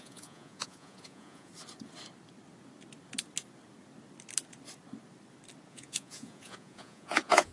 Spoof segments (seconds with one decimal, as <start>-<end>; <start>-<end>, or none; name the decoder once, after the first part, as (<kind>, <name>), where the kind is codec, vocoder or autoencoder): 0.0-1.5 (vocoder, Vocos); 5.7-7.5